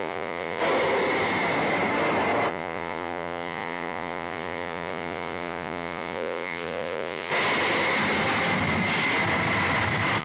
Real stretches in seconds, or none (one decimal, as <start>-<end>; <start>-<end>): 0.6-2.5; 7.3-10.2

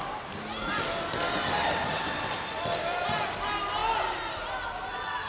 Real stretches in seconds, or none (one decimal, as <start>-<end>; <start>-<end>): 0.0-5.3

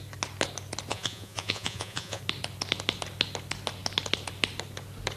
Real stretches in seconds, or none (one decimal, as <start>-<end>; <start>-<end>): 0.0-0.9; 2.2-5.2

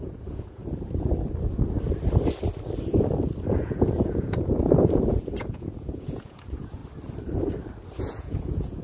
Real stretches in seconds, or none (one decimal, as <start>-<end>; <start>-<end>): 0.6-3.6; 6.8-8.0

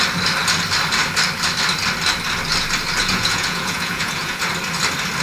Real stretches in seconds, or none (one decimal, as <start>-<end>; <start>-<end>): 0.0-3.0; 4.5-5.2

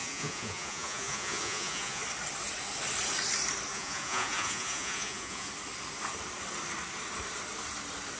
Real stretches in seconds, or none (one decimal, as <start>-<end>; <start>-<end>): 2.0-3.7; 5.5-8.2

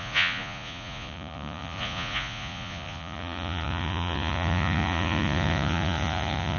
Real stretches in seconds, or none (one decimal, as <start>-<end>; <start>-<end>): none